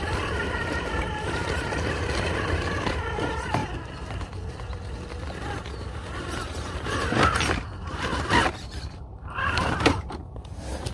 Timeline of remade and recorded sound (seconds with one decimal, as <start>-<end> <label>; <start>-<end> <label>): 0.0-1.4 remade; 1.4-3.0 recorded; 3.0-3.6 remade; 3.6-6.2 recorded; 6.2-8.1 remade; 8.1-9.0 recorded; 9.0-10.9 remade